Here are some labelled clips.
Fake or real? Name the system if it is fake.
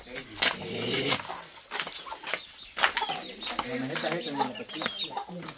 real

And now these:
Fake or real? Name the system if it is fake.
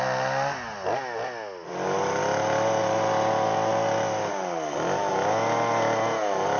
real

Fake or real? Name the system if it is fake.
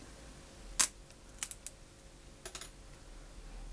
real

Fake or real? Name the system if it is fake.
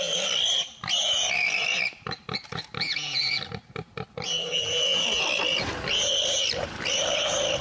fake, vocoder, BigVGAN v2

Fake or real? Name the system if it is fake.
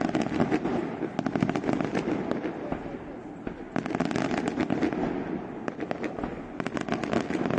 real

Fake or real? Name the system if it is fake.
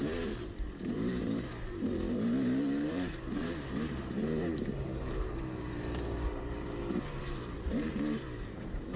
fake, vocoder, BigVGAN v2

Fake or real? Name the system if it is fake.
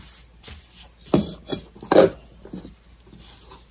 real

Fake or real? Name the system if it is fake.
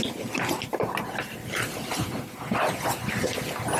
real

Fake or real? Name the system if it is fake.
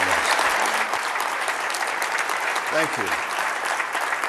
fake, vocoder, BigVGAN v2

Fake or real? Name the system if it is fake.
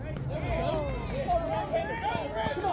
real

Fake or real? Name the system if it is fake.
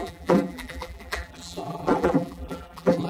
fake, vocoder, BigVGAN v2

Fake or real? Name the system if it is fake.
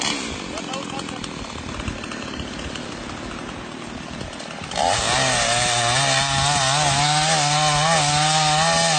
real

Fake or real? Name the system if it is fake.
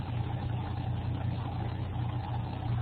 real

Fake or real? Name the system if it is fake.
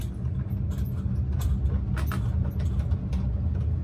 real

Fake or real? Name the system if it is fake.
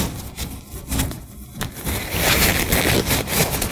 real